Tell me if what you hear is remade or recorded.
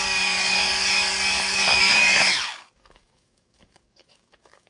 remade